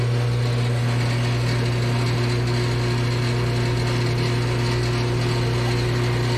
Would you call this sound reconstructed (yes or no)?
no